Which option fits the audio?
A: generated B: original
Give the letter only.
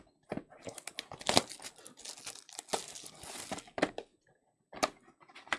B